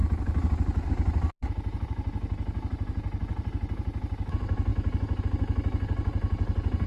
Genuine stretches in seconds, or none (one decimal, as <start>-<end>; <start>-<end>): 0.0-6.9